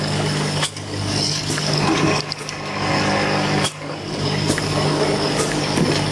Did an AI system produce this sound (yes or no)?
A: yes